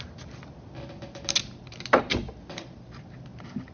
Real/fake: real